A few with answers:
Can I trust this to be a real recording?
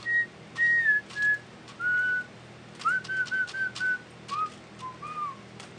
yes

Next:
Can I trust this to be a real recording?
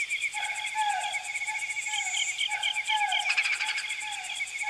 yes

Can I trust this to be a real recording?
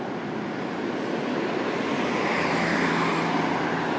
yes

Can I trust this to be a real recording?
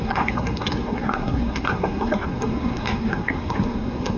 no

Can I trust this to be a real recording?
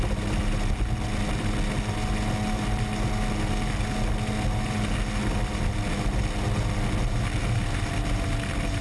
yes